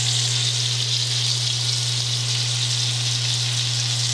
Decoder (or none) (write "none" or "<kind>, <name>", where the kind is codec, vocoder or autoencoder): none